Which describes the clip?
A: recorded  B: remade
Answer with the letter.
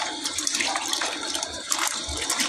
B